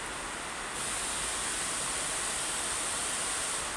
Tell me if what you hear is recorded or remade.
recorded